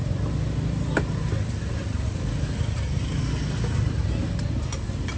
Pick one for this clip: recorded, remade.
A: recorded